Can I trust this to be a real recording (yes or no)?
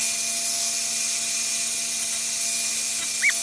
yes